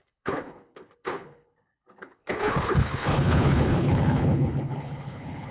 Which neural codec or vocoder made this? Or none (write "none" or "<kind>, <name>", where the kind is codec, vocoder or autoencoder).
codec, HILCodec